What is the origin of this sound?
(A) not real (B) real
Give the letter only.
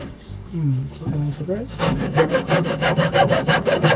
A